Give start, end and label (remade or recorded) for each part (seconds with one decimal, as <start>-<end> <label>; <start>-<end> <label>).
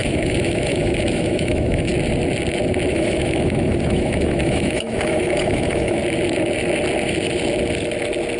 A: 0.0-1.9 remade; 1.9-2.9 recorded; 2.9-6.0 remade; 6.0-8.4 recorded